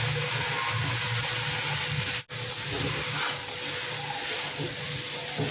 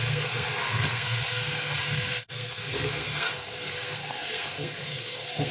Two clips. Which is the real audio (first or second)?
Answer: first